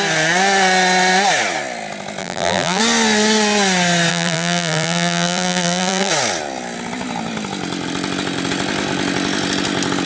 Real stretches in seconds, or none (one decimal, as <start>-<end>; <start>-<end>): 0.0-2.2; 2.8-4.1; 6.1-10.1